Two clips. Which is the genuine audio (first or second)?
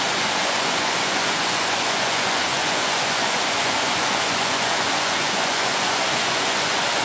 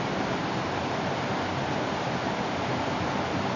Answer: second